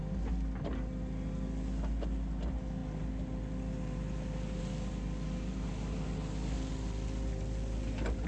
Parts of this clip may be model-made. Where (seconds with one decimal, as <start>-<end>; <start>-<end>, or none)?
none